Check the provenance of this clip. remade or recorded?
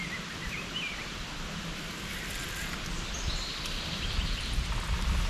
recorded